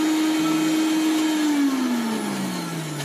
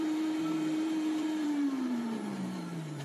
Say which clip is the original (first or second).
first